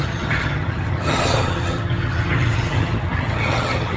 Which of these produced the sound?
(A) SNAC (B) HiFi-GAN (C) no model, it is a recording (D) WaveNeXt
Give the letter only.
B